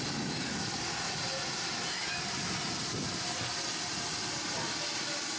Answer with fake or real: real